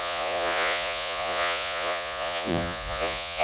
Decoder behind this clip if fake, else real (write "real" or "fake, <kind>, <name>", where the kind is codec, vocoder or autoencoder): fake, vocoder, Vocos